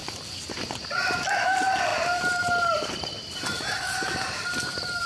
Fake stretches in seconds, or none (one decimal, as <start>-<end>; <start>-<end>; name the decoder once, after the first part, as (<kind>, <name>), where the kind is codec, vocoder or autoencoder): 1.9-5.1 (vocoder, BigVGAN v2)